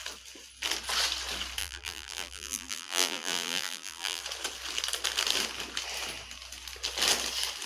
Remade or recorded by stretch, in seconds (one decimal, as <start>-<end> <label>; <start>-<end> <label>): 0.0-1.6 recorded; 1.6-4.2 remade; 4.2-7.7 recorded